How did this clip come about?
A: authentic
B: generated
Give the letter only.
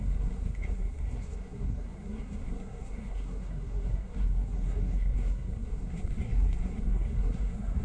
B